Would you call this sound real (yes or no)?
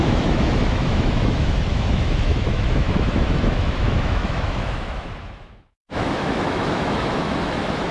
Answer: no